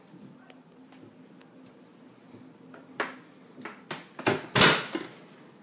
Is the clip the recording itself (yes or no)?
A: yes